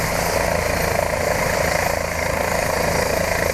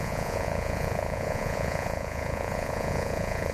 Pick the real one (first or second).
first